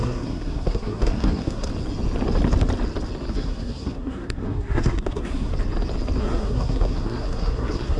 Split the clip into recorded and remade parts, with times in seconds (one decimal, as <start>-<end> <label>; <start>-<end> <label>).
0.0-1.7 remade; 1.7-3.3 recorded; 3.3-5.5 remade; 5.5-6.2 recorded; 6.2-8.0 remade